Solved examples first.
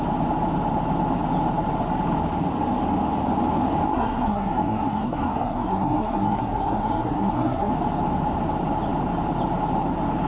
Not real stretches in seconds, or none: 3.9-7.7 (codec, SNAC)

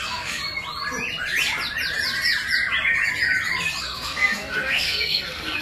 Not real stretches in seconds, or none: 0.0-0.4 (codec, SNAC); 3.8-5.6

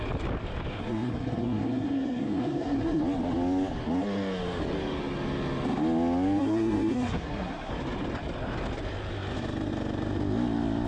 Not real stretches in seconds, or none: 0.8-3.0 (codec, SNAC); 6.4-7.7

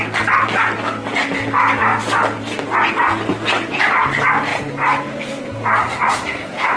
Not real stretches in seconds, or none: 5.8-6.8 (codec, SNAC)

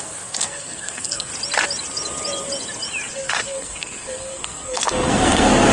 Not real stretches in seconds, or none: 0.0-1.3 (codec, SNAC); 3.1-5.7

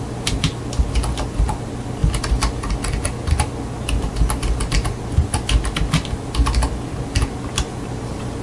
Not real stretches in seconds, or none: none

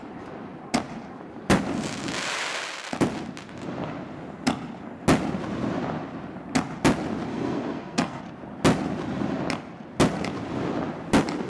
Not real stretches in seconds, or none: 7.3-8.2 (codec, SNAC)